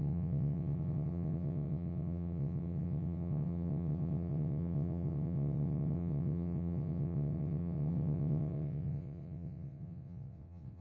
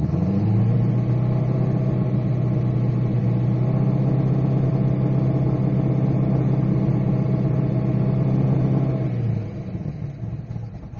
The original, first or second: second